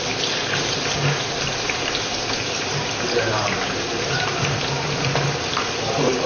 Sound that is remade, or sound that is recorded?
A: remade